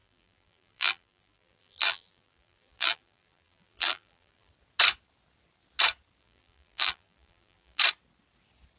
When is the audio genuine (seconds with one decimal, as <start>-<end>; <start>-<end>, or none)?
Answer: 4.5-6.2; 7.8-8.8